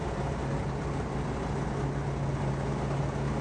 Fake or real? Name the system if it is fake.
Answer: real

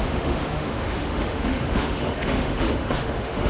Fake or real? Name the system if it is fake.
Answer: fake, autoencoder, DAC-VAE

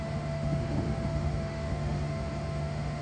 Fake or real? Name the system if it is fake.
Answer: fake, autoencoder, DAC-VAE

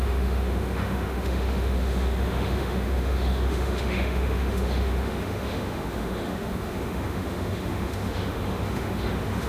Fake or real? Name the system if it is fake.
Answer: fake, autoencoder, DAC-VAE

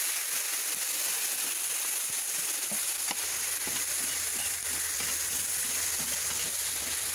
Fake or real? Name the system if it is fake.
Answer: real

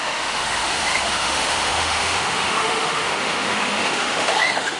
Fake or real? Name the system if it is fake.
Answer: fake, autoencoder, DAC-VAE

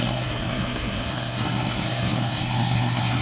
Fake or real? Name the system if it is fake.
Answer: fake, codec, SNAC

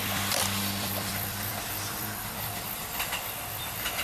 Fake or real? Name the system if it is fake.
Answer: fake, vocoder, BigVGAN v2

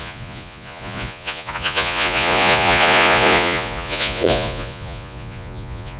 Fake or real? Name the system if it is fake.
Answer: fake, vocoder, Vocos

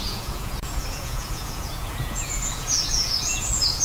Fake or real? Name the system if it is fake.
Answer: fake, vocoder, Vocos